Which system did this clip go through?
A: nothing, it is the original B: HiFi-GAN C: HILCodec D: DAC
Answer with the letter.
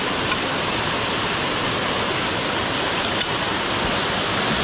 A